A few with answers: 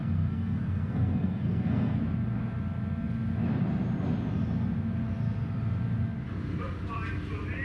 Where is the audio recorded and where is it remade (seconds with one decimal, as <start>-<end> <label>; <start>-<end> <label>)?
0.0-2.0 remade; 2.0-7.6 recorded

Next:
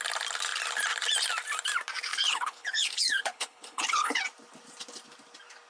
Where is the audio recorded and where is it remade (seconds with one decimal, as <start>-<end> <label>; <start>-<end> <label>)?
0.0-2.1 recorded; 2.1-4.2 remade; 4.2-5.7 recorded

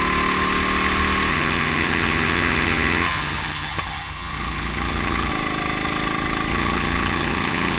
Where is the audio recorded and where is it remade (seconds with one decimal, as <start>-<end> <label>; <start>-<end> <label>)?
0.0-1.3 recorded; 1.3-5.3 remade; 5.3-6.5 recorded; 6.5-7.8 remade

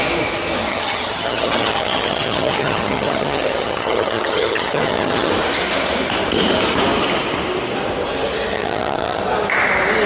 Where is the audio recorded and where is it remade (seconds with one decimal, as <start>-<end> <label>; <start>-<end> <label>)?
0.0-0.7 recorded; 0.7-5.3 remade; 5.3-8.5 recorded; 8.5-9.2 remade; 9.2-10.1 recorded

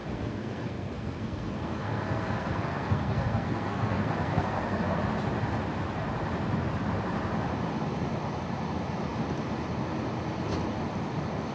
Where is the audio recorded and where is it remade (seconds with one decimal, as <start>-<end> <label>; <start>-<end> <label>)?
0.0-5.0 remade; 5.0-11.5 recorded

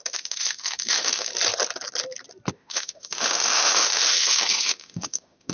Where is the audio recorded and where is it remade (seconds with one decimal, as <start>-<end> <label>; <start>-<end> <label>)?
0.0-1.3 remade; 1.3-2.5 recorded; 2.5-5.5 remade

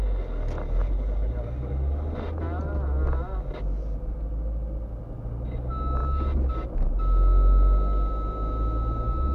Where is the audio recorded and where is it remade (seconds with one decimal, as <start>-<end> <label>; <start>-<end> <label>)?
0.0-0.8 recorded; 0.8-1.7 remade; 1.7-9.3 recorded